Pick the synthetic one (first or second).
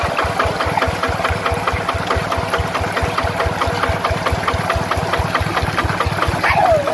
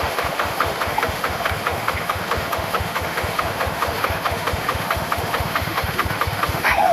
second